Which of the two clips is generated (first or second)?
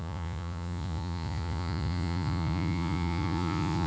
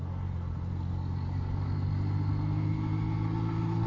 first